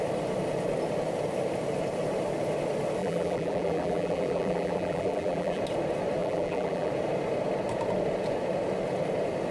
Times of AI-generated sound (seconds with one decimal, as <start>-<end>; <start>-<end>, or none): 3.0-5.6; 6.2-6.9